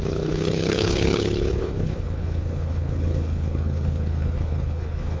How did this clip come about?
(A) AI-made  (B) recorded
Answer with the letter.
A